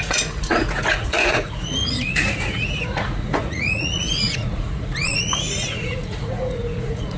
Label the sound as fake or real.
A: fake